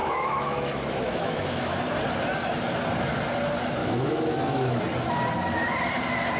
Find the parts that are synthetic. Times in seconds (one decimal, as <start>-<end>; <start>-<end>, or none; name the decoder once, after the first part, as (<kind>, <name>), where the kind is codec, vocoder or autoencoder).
0.0-1.8 (autoencoder, DAC-VAE); 3.8-4.8